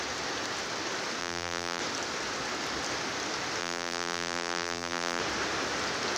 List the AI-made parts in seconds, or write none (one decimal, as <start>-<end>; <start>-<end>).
1.2-1.8; 3.6-5.2